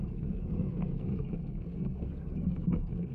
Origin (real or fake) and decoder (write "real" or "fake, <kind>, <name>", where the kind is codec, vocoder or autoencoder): fake, codec, SNAC